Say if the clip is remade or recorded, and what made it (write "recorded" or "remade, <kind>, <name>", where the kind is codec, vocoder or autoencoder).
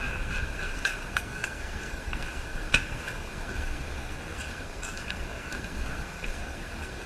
remade, codec, SNAC